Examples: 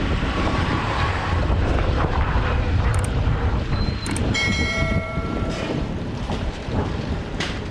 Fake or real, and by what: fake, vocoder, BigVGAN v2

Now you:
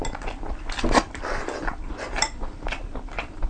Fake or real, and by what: fake, vocoder, BigVGAN v2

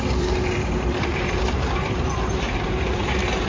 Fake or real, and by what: fake, vocoder, BigVGAN v2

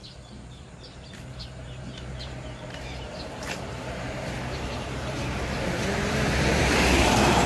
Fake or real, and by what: fake, vocoder, BigVGAN v2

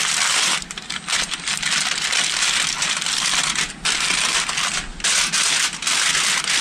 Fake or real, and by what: real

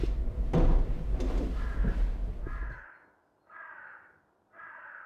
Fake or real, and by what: real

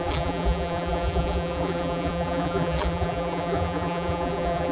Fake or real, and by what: fake, vocoder, BigVGAN v2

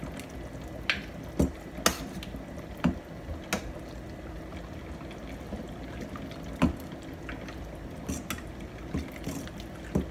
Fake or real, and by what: real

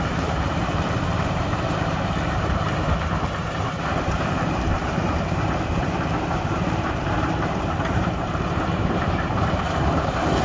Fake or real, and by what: fake, vocoder, BigVGAN v2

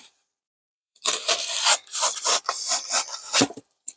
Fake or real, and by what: fake, vocoder, BigVGAN v2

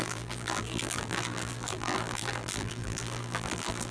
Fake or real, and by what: fake, vocoder, BigVGAN v2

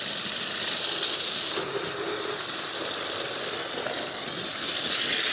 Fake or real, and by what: real